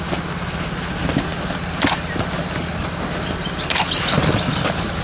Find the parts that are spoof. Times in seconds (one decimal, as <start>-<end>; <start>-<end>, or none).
none